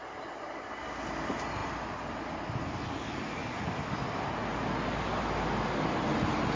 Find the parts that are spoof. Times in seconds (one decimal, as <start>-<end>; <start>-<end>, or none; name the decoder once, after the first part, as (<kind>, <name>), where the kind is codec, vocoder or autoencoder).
none